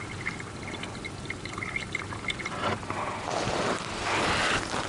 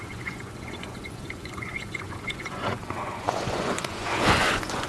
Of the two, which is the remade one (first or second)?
second